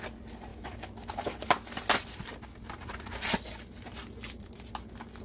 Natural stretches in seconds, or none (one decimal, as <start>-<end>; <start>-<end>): 0.0-5.2